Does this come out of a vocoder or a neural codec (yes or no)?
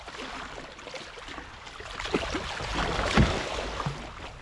no